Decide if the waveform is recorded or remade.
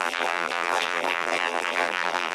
remade